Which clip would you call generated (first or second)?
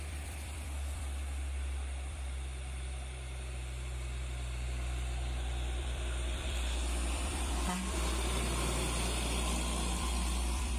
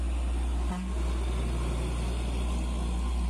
first